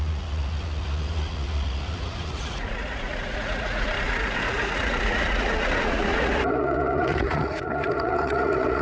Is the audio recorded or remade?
remade